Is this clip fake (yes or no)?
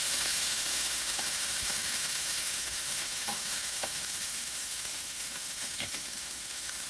yes